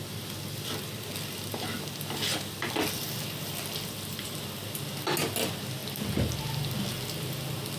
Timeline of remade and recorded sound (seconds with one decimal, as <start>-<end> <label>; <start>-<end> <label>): 0.0-7.8 recorded